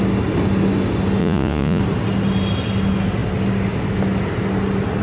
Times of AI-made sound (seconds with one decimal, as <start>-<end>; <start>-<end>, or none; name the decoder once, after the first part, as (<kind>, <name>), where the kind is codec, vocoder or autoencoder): 1.2-1.8 (vocoder, Vocos)